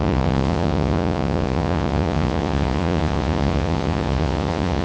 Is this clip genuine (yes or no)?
no